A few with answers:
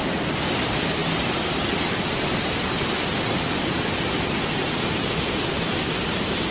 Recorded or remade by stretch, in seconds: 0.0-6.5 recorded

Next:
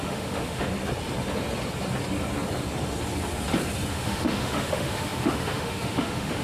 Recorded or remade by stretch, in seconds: 0.0-0.7 remade; 0.7-3.9 recorded; 3.9-6.4 remade

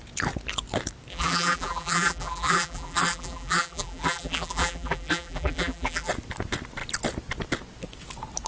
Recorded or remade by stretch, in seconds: 0.0-1.1 recorded; 1.1-6.1 remade; 6.1-8.5 recorded

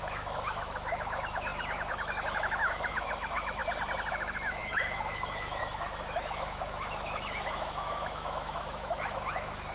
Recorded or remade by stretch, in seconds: 0.0-3.6 remade; 3.6-4.1 recorded; 4.1-9.7 remade

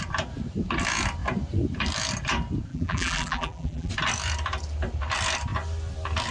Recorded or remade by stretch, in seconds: 0.0-2.7 recorded; 2.7-3.9 remade; 3.9-6.3 recorded

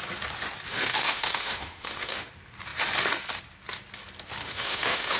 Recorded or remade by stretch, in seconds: 0.0-0.7 recorded; 0.7-2.3 remade; 2.3-4.4 recorded; 4.4-5.2 remade

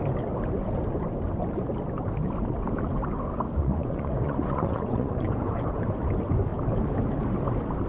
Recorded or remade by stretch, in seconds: 0.0-3.6 recorded; 3.6-5.7 remade; 5.7-7.9 recorded

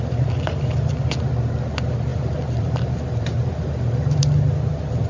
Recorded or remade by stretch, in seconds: 0.0-2.1 recorded; 2.1-4.2 remade; 4.2-5.1 recorded